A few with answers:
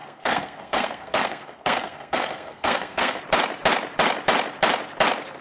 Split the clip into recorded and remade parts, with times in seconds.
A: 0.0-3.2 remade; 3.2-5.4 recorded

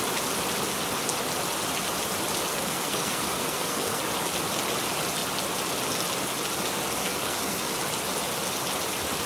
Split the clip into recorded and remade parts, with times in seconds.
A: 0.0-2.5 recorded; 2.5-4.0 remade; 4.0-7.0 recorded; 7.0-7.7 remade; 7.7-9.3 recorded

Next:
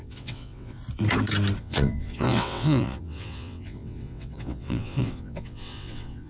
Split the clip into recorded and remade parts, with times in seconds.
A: 0.0-0.8 remade; 0.8-1.6 recorded; 1.6-6.3 remade